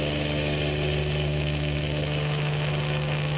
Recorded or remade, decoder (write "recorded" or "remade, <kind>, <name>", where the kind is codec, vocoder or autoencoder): recorded